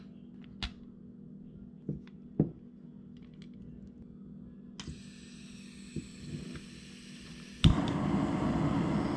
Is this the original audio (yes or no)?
yes